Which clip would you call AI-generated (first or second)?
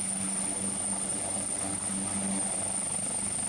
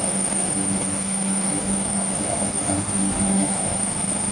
second